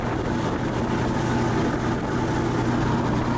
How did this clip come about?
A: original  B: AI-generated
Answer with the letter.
A